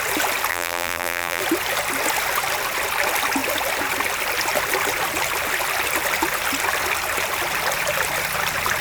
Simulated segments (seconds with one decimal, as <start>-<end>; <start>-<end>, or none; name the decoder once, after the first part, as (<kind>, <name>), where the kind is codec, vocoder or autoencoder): 0.5-1.4 (vocoder, BigVGAN v2)